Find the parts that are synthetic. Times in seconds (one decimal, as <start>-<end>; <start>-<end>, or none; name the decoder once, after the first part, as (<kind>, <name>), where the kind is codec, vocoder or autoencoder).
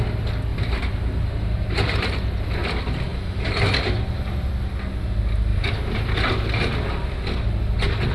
0.5-2.4 (vocoder, BigVGAN v2); 3.1-4.5; 5.5-6.3